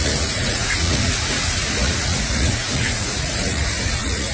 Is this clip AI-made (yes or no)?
yes